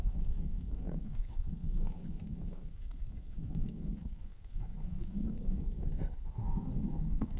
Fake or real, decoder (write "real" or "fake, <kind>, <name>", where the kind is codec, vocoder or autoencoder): fake, codec, SNAC